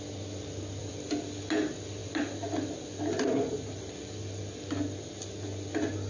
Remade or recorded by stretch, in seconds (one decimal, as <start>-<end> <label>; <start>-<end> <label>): 0.0-0.8 recorded; 0.8-1.4 remade; 1.4-2.0 recorded; 2.0-4.7 remade; 4.7-6.1 recorded